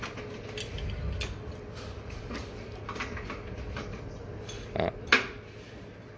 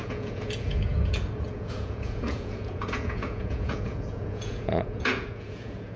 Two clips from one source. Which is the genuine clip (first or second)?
first